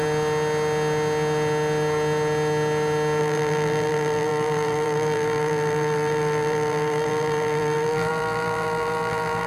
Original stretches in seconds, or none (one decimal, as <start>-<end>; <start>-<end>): 0.0-3.2

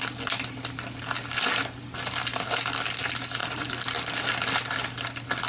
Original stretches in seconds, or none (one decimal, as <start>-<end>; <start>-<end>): 0.0-5.5

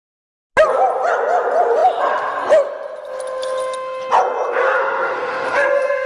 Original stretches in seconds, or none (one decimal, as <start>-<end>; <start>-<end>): 0.0-4.6

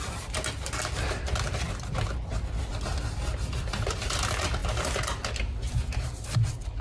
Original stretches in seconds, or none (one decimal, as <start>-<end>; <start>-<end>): 0.0-6.8

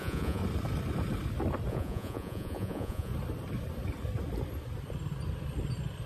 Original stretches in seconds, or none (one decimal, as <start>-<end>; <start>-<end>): 0.4-1.7; 3.1-6.1

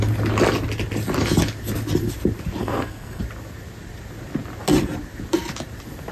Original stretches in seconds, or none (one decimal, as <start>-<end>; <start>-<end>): 0.0-2.6; 3.2-6.1

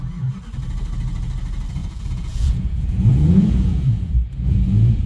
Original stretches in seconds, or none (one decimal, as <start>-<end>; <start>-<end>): 0.0-1.8

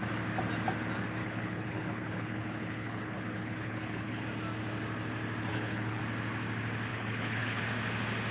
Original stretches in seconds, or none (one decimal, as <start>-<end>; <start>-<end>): 0.0-1.2; 4.2-5.5; 6.0-6.9; 7.6-8.3